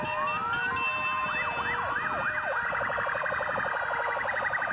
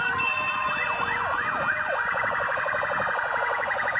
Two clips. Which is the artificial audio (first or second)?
second